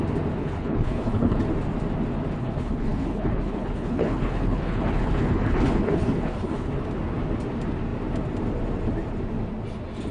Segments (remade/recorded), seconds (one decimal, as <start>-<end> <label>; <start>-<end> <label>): 0.0-0.4 recorded; 0.4-1.4 remade; 1.4-2.4 recorded; 2.4-6.7 remade; 6.7-10.1 recorded